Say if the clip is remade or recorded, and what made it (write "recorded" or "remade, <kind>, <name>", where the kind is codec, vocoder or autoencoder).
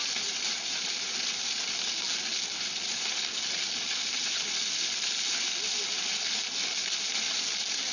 recorded